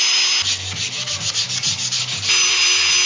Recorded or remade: recorded